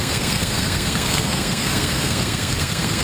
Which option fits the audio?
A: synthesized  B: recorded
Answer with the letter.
A